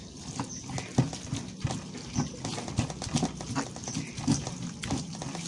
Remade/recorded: recorded